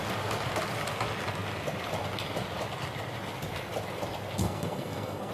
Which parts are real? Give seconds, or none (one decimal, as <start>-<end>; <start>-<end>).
0.0-4.4